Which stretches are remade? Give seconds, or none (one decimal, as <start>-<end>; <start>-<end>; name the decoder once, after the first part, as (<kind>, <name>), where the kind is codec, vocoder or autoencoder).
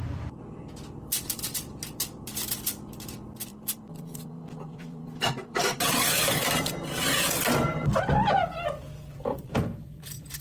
0.0-10.4 (vocoder, BigVGAN v2)